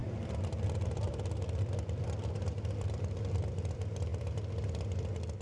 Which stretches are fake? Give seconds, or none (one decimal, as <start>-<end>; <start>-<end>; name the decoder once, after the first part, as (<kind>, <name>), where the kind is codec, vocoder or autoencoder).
0.9-5.4 (vocoder, BigVGAN v2)